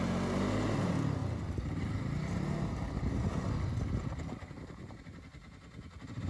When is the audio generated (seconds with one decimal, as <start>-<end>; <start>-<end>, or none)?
none